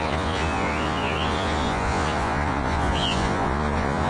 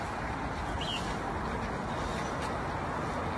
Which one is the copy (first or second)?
first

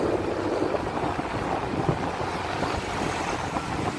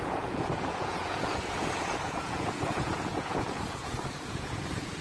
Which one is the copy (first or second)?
second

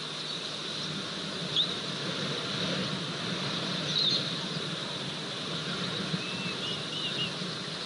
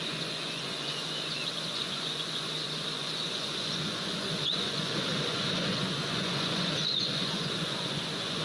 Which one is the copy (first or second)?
second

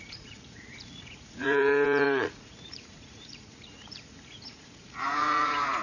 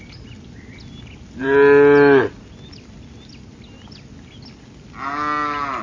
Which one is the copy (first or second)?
first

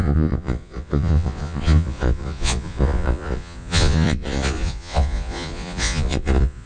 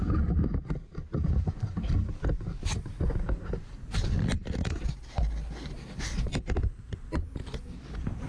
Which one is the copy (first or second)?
first